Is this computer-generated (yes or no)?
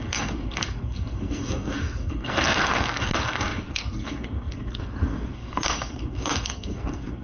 yes